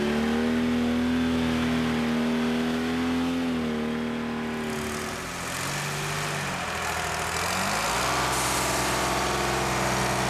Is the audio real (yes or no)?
yes